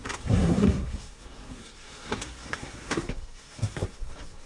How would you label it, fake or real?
fake